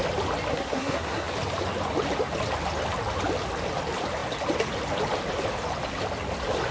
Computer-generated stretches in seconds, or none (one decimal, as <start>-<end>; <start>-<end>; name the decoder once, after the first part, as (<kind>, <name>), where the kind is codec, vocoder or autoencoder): 0.5-1.3 (codec, SNAC)